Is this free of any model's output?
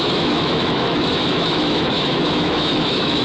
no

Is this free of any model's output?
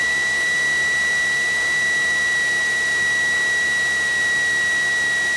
yes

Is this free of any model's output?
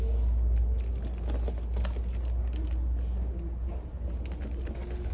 yes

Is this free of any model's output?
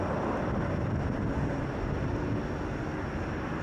yes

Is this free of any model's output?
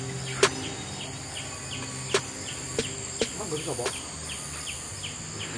yes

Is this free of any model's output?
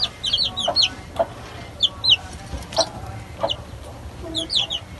yes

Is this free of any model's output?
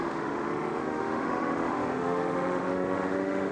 no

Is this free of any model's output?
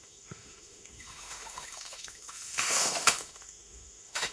no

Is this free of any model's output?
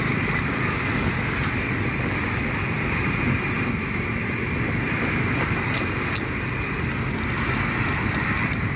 yes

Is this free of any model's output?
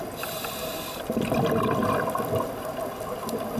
yes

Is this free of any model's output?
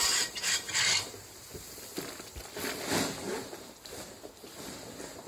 yes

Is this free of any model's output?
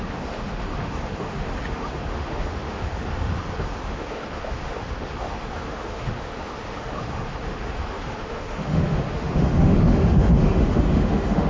no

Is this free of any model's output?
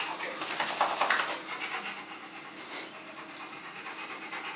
yes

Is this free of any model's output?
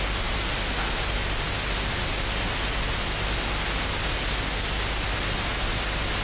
yes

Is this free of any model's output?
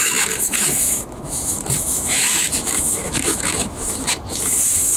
no